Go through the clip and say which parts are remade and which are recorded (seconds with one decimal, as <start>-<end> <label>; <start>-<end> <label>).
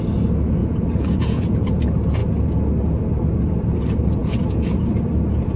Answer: 0.0-0.6 recorded; 0.6-1.8 remade; 1.8-4.2 recorded; 4.2-4.8 remade; 4.8-5.6 recorded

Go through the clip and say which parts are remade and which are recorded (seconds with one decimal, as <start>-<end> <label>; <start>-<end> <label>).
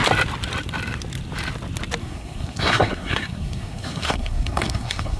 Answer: 0.0-2.0 recorded; 2.0-5.2 remade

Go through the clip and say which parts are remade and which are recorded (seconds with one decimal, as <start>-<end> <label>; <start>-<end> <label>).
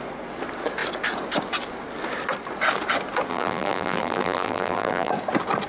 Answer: 0.0-3.3 recorded; 3.3-5.1 remade; 5.1-5.7 recorded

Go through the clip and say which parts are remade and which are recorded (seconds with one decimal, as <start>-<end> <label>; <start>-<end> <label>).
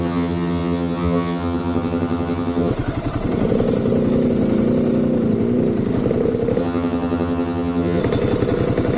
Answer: 0.0-2.7 remade; 2.7-6.6 recorded; 6.6-8.0 remade; 8.0-9.0 recorded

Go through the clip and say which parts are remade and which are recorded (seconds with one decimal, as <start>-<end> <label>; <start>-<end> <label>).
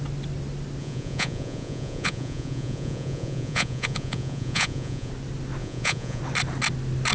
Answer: 0.0-0.8 recorded; 0.8-5.1 remade; 5.1-5.6 recorded; 5.6-6.2 remade; 6.2-7.1 recorded